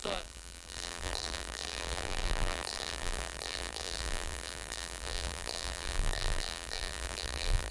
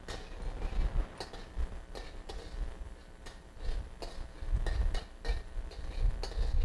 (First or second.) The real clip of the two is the second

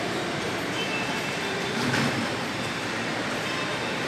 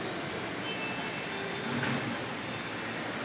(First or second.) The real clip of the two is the second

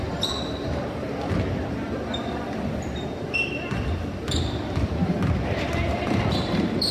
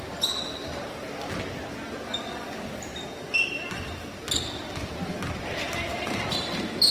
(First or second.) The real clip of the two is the second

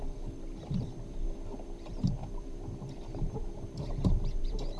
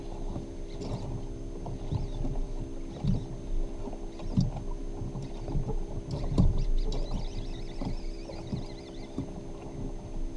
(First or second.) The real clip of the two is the second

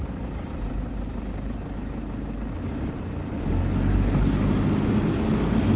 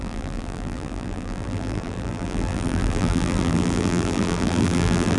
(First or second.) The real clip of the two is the first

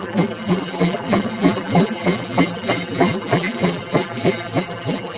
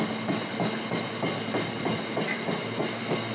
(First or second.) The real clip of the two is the second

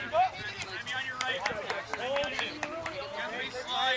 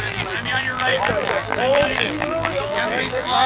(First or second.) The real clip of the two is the first